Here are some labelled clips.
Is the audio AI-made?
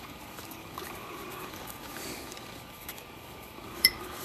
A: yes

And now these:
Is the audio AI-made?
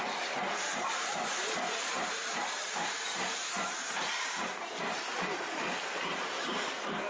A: yes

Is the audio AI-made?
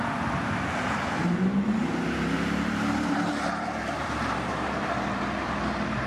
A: yes